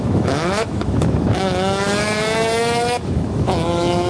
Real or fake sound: fake